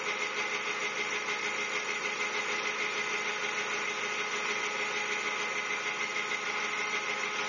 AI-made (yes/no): no